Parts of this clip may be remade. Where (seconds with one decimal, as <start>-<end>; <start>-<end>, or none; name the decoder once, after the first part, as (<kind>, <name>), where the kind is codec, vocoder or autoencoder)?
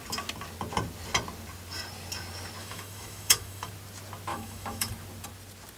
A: 2.6-3.7 (autoencoder, DAC-VAE); 4.3-4.9